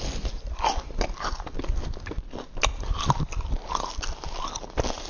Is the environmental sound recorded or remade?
recorded